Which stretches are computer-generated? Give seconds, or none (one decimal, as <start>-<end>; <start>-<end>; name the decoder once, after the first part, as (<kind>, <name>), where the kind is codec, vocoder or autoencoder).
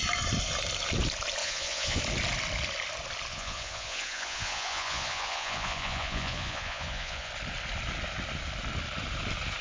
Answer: 1.4-2.0 (vocoder, Vocos); 3.3-7.3